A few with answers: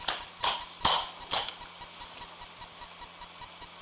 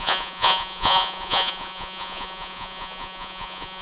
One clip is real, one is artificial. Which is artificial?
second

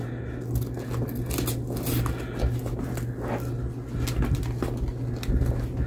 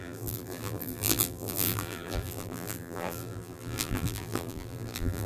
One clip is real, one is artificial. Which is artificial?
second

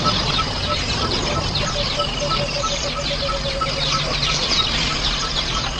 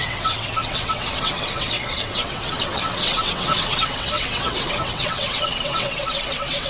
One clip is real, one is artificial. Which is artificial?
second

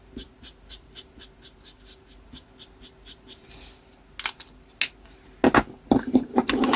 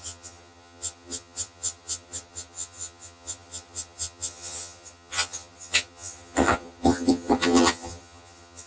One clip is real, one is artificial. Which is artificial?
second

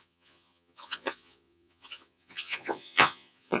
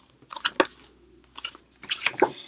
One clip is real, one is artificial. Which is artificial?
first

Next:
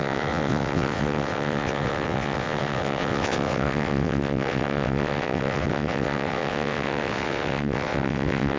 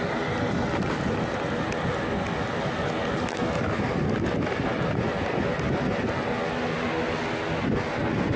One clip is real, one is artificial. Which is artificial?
first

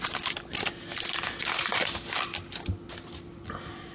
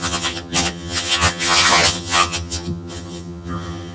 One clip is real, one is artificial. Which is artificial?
second